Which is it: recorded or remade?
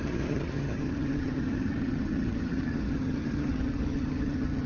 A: remade